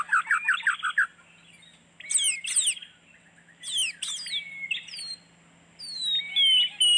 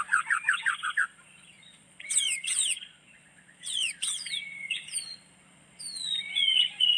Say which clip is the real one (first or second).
first